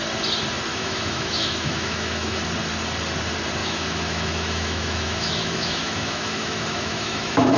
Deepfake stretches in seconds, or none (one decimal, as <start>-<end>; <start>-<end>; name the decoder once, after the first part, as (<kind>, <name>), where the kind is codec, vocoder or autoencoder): 0.7-2.4 (autoencoder, DAC-VAE); 3.6-7.6